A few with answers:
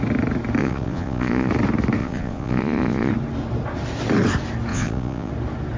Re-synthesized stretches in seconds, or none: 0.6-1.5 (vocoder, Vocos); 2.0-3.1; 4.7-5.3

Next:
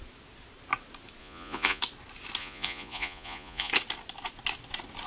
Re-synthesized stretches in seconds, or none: 1.2-1.8 (vocoder, Vocos); 2.4-3.7

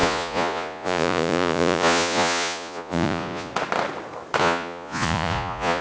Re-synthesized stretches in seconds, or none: 0.0-3.5 (vocoder, Vocos); 4.4-5.8

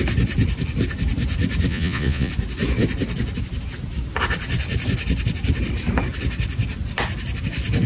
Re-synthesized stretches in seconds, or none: 1.7-2.3 (vocoder, Vocos)

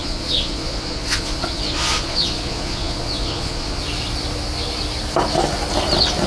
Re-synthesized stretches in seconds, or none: 0.0-3.8 (vocoder, Vocos)